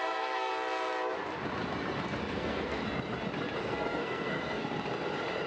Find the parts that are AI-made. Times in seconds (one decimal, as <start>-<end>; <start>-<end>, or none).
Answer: 0.0-0.5; 2.3-2.8; 3.6-4.6